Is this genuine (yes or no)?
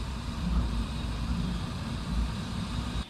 no